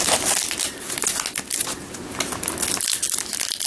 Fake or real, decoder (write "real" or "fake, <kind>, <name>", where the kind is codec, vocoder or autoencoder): real